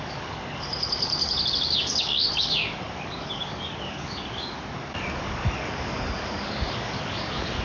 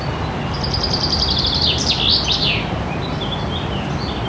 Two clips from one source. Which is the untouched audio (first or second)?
second